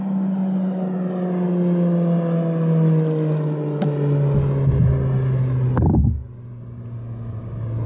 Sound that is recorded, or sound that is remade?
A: recorded